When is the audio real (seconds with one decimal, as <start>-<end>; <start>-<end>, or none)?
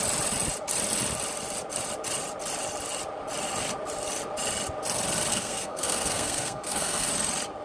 0.0-5.3; 7.1-7.6